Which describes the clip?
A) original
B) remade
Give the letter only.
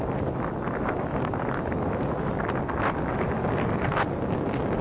A